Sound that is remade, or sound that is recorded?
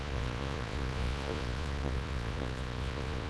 remade